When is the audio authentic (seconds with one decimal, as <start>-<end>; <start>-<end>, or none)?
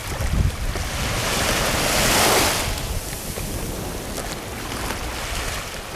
0.0-6.0